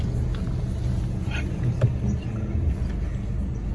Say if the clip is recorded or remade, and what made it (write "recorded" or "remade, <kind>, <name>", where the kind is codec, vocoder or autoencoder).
recorded